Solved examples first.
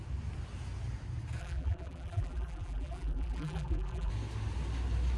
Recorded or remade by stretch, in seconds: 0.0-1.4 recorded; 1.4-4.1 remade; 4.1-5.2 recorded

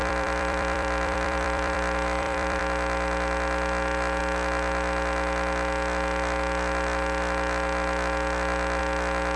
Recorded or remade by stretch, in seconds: 0.0-2.6 remade; 2.6-9.4 recorded

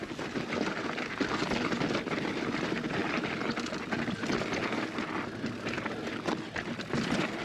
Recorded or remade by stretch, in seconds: 0.0-7.4 recorded

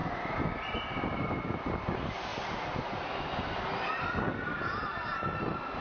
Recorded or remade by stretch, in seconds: 0.0-5.8 recorded